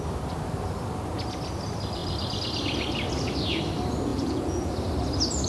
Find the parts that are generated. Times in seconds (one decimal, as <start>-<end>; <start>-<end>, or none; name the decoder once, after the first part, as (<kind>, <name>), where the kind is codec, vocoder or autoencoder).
4.1-4.7 (vocoder, Vocos)